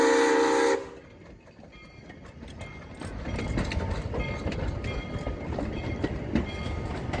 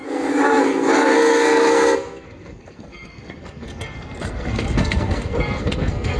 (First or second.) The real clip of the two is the first